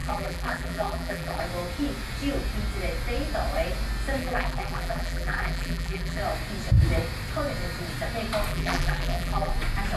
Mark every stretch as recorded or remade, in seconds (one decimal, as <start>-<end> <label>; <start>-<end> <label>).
0.0-1.4 remade; 1.4-4.2 recorded; 4.2-6.2 remade; 6.2-8.5 recorded; 8.5-9.5 remade; 9.5-10.0 recorded